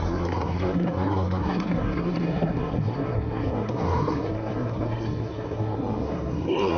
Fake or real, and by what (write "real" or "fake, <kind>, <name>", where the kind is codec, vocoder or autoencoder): fake, codec, SNAC